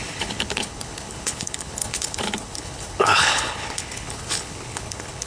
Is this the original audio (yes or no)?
no